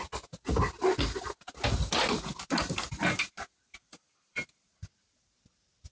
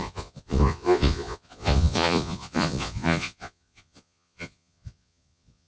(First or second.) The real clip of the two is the first